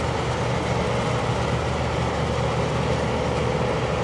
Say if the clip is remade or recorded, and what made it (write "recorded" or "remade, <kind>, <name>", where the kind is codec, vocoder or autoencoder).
recorded